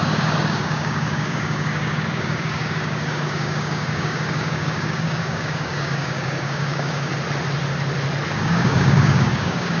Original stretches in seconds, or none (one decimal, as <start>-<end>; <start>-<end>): 7.1-8.3